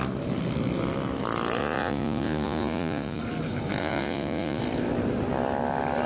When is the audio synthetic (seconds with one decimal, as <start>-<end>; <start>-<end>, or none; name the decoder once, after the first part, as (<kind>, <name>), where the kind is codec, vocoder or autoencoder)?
1.6-3.2 (vocoder, Vocos); 3.8-4.6